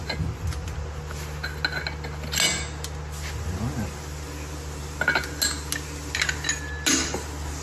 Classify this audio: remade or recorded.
recorded